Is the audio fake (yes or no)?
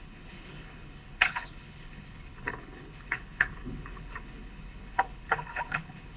yes